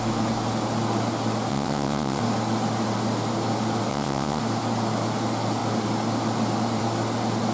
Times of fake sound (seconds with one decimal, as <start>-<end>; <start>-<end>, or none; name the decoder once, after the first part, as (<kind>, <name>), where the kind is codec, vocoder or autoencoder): 1.5-2.2 (vocoder, WaveNeXt); 3.9-4.4